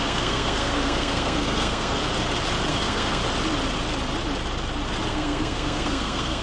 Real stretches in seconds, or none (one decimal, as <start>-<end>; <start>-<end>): 2.0-2.7; 3.2-5.1